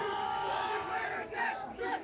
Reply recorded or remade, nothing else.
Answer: remade